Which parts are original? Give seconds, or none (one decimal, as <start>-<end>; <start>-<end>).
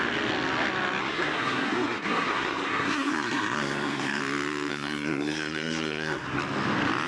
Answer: 0.0-1.0; 4.2-4.7; 6.4-7.1